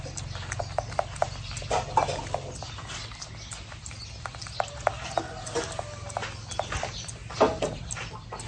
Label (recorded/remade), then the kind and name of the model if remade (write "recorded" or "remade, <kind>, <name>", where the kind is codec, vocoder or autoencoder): recorded